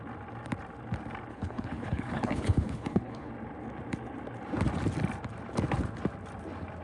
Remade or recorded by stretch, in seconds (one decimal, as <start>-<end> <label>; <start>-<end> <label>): 0.0-1.3 recorded; 1.3-3.3 remade; 3.3-6.8 recorded